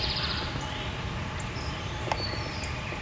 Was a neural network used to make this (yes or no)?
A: no